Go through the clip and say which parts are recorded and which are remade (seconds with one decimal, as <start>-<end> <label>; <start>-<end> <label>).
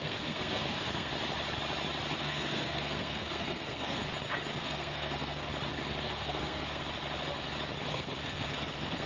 0.0-1.1 remade; 1.1-2.2 recorded; 2.2-4.0 remade; 4.0-4.6 recorded; 4.6-5.5 remade; 5.5-6.0 recorded; 6.0-6.8 remade; 6.8-7.9 recorded; 7.9-9.1 remade